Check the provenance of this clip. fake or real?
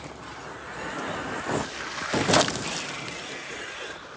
real